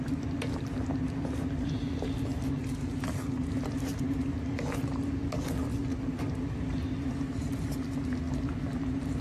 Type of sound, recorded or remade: recorded